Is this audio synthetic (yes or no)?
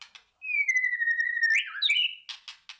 no